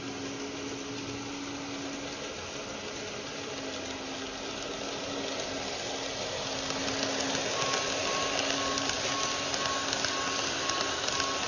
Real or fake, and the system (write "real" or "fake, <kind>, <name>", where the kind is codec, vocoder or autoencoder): real